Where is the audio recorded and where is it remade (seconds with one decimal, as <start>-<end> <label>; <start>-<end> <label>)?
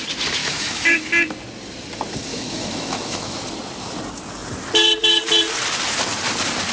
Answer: 0.0-0.4 recorded; 0.4-1.1 remade; 1.1-2.3 recorded; 2.3-3.4 remade; 3.4-6.7 recorded